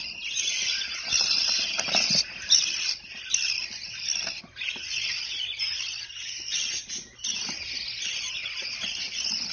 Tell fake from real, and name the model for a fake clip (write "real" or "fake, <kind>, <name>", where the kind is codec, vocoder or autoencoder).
real